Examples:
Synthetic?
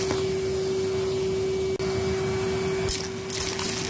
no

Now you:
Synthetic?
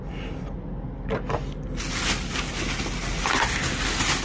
no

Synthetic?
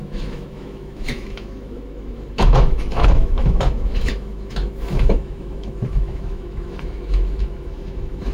yes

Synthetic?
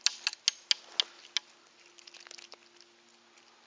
no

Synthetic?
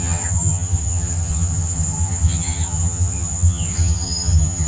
yes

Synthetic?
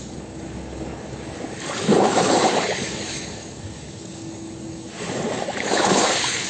yes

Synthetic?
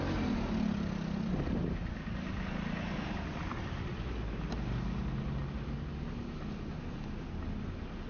no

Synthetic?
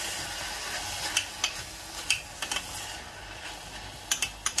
no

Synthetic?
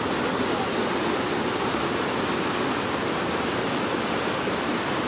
no